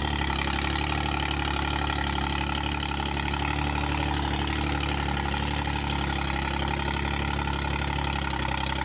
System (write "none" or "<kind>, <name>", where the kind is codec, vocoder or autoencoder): none